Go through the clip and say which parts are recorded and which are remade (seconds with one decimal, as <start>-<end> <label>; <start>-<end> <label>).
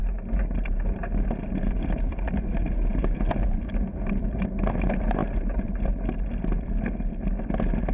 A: 0.0-4.6 remade; 4.6-5.2 recorded; 5.2-5.9 remade; 5.9-7.9 recorded